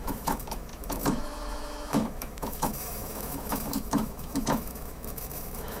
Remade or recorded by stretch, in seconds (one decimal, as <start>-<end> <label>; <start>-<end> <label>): 0.0-5.8 remade